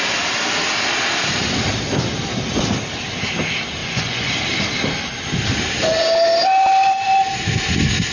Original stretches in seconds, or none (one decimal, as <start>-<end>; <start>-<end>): 0.0-3.8; 4.3-8.1

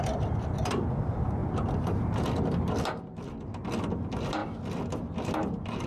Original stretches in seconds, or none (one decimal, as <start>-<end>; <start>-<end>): 0.0-5.9